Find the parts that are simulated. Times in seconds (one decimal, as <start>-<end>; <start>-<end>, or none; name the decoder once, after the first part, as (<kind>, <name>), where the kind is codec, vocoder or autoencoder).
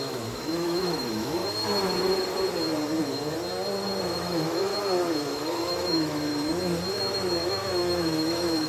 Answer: 0.0-1.4 (autoencoder, DAC-VAE); 4.0-4.7; 5.3-6.3; 6.9-8.7